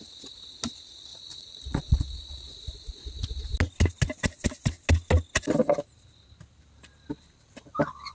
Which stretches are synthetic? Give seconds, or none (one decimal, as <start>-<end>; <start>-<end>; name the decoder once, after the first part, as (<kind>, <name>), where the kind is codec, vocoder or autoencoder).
1.1-2.6 (vocoder, Vocos)